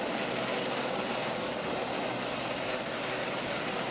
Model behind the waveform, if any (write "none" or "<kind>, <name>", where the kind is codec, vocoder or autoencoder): none